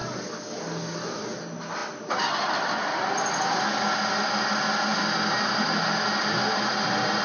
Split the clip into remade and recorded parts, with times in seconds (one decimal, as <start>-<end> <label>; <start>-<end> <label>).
0.0-7.2 recorded